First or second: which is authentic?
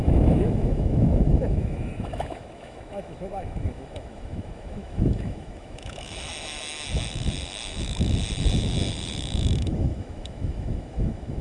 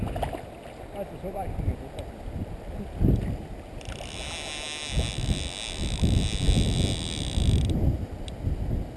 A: second